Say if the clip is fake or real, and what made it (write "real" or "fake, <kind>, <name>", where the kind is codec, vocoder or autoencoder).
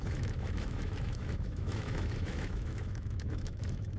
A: fake, autoencoder, DAC-VAE